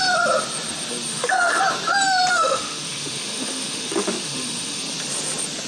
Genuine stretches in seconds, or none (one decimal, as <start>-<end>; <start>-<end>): 0.0-1.1; 1.6-2.3; 4.8-5.7

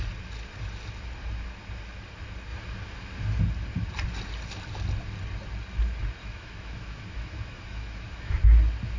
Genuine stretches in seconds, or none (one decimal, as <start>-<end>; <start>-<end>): 0.0-6.2; 8.4-9.0

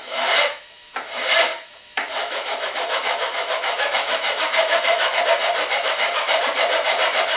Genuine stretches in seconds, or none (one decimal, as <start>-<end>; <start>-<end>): 1.0-1.5; 5.2-5.8; 6.4-7.4

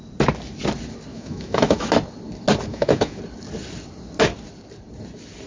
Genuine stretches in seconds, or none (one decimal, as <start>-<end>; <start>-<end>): 0.0-1.1; 1.9-2.7; 3.2-5.5

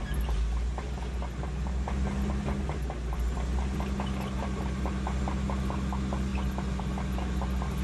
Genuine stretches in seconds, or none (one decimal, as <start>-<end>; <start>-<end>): 0.0-7.8